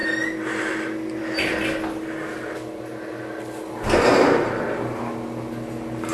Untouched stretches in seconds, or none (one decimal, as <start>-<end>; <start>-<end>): 1.2-6.1